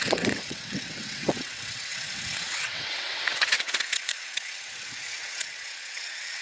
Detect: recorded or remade remade